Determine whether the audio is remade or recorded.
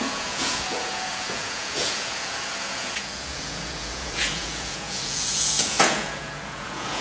remade